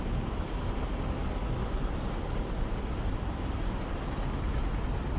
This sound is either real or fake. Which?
real